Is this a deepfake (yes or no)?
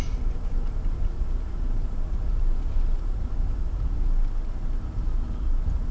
no